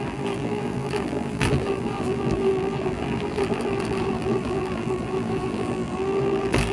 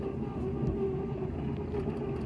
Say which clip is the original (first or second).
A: second